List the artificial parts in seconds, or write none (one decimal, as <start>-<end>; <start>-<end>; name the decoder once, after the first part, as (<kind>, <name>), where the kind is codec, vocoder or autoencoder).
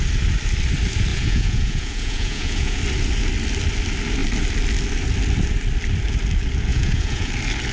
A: 1.1-2.8 (vocoder, Vocos); 6.7-7.3